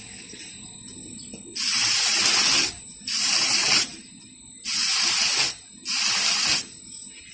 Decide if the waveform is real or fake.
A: real